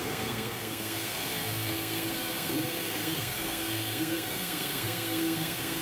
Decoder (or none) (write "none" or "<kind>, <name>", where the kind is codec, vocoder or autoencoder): codec, SNAC